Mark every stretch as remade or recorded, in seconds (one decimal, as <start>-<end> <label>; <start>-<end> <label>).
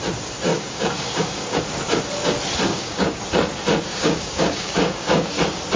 0.0-0.5 recorded; 0.5-1.6 remade; 1.6-2.7 recorded; 2.7-3.2 remade; 3.2-3.9 recorded; 3.9-5.3 remade; 5.3-5.8 recorded